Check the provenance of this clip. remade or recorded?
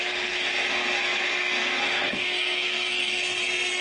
remade